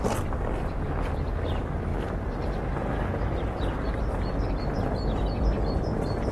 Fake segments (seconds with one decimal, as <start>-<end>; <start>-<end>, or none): none